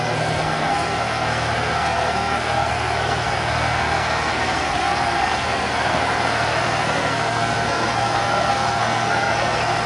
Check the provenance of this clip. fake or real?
fake